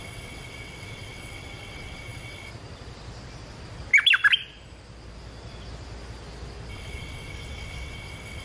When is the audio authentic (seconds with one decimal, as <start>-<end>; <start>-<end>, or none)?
2.5-6.7